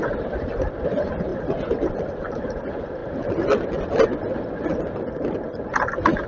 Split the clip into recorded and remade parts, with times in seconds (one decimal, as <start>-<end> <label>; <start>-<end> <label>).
0.0-6.3 recorded